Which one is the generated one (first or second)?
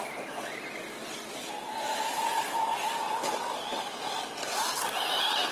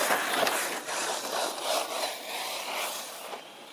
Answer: second